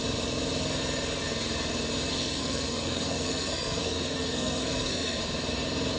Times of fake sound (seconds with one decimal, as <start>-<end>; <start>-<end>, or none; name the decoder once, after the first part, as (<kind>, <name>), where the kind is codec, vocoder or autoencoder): 2.1-5.2 (codec, SNAC)

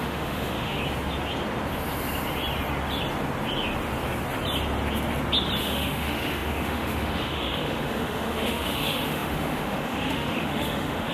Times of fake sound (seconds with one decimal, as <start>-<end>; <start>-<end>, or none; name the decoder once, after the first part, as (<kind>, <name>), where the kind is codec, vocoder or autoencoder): 0.0-0.8 (autoencoder, DAC-VAE); 5.6-11.1

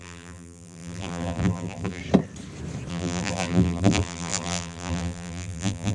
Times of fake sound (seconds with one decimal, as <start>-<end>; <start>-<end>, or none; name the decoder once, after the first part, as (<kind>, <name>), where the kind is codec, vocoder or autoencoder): 0.0-2.0 (vocoder, BigVGAN v2); 2.9-5.9

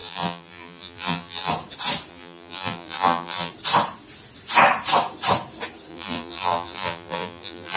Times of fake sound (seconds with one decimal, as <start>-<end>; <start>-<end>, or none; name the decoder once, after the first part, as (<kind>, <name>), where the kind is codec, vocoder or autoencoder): 0.0-1.5 (vocoder, BigVGAN v2); 2.1-3.5; 5.9-7.8